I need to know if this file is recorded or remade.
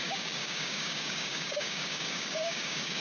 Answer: remade